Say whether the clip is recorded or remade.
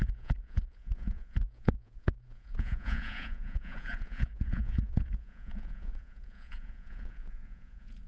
remade